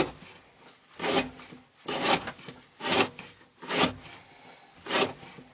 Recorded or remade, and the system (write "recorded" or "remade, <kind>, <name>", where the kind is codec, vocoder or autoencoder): recorded